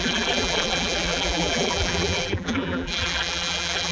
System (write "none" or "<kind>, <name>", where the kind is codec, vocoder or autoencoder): vocoder, BigVGAN v2